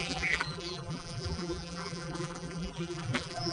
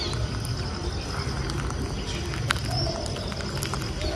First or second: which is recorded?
second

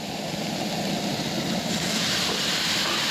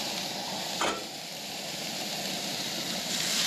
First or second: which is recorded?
first